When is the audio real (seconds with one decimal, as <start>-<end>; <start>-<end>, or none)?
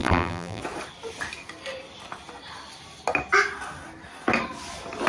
0.6-5.1